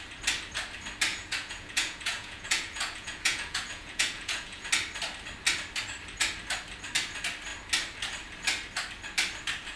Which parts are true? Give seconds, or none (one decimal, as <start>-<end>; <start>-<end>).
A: 0.0-1.1; 4.7-9.8